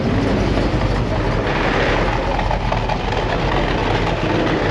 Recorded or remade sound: recorded